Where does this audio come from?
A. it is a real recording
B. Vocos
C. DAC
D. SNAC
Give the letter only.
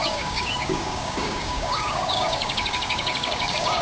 C